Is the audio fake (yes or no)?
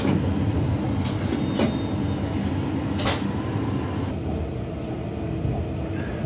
no